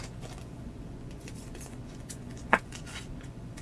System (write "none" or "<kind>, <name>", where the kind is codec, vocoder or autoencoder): vocoder, Vocos